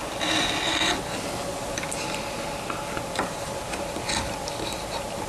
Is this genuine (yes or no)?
yes